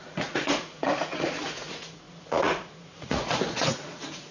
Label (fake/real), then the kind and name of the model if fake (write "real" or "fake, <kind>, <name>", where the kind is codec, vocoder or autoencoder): fake, vocoder, Vocos